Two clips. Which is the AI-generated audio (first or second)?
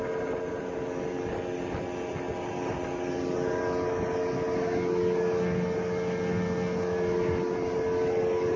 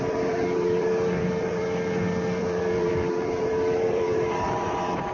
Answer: second